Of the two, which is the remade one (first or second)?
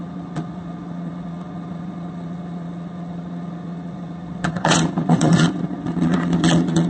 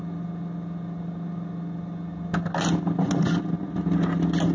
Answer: first